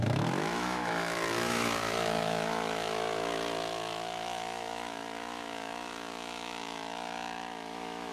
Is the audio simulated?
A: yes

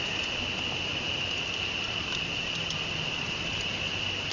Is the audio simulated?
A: no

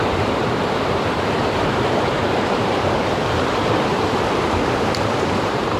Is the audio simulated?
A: yes